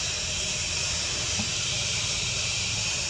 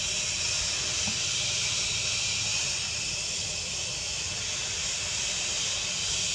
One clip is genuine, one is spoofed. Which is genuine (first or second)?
second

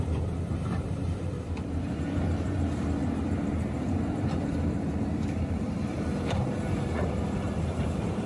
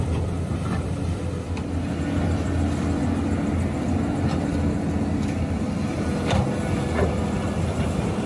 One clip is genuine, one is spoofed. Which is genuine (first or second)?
second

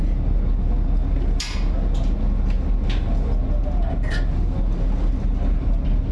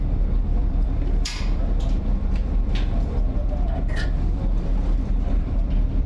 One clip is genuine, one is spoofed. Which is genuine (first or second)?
first